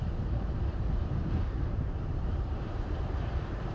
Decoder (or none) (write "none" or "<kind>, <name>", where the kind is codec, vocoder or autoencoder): vocoder, BigVGAN v2